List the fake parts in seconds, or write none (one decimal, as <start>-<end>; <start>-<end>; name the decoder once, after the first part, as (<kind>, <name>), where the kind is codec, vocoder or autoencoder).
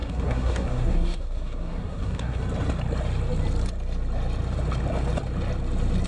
0.0-2.4 (codec, SNAC)